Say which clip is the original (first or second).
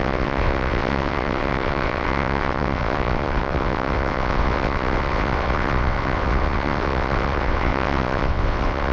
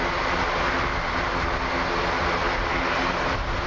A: second